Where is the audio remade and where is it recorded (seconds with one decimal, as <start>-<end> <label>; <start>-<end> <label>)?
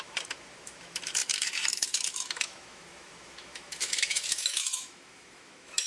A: 0.0-5.9 remade